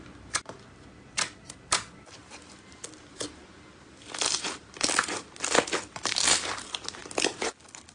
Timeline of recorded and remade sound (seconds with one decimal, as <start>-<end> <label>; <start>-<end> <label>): 0.0-7.9 recorded